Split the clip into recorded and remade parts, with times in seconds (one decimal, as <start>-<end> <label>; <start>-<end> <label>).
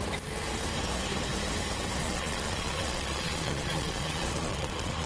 0.0-2.0 recorded; 2.0-5.1 remade